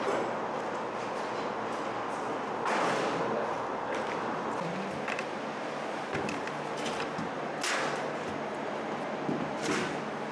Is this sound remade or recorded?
recorded